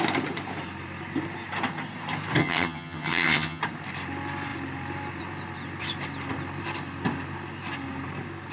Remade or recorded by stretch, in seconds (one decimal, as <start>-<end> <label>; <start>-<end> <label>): 0.0-2.4 recorded; 2.4-3.6 remade; 3.6-8.5 recorded